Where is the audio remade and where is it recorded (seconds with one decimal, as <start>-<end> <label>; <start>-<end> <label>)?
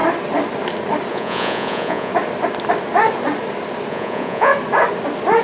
0.0-1.1 recorded; 1.1-2.1 remade; 2.1-3.9 recorded; 3.9-4.5 remade; 4.5-5.4 recorded